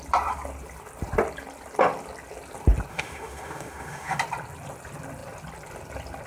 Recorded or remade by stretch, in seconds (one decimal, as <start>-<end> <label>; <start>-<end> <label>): 0.0-2.9 recorded; 2.9-4.2 remade; 4.2-6.3 recorded